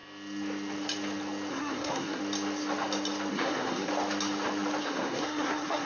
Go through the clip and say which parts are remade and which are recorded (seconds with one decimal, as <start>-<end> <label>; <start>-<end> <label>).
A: 0.0-1.5 recorded; 1.5-2.2 remade; 2.2-3.3 recorded; 3.3-3.9 remade; 3.9-4.8 recorded; 4.8-5.8 remade